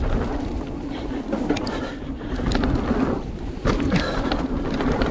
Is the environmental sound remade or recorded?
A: recorded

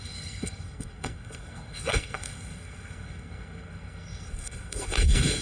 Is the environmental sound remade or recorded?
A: remade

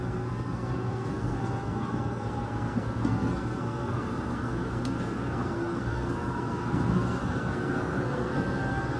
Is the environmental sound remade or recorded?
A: remade